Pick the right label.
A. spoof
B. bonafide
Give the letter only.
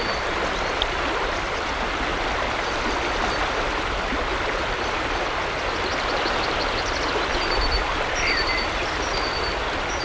A